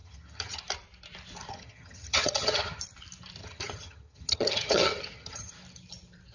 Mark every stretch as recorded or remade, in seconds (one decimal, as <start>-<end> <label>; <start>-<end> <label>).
0.0-0.6 remade; 0.6-1.5 recorded; 1.5-2.8 remade; 2.8-3.4 recorded; 3.4-5.5 remade; 5.5-6.3 recorded